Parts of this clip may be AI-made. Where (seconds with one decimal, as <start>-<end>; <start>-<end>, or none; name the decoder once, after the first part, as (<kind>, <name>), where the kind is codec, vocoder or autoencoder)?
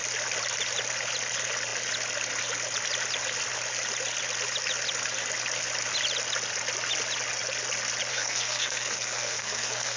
8.1-10.0 (codec, SNAC)